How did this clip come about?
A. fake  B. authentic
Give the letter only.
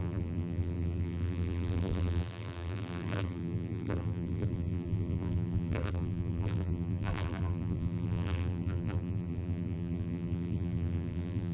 A